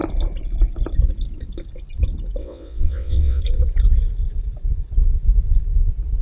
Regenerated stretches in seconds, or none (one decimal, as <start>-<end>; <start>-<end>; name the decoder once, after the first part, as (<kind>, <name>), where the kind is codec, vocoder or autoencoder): 2.4-3.4 (vocoder, WaveNeXt)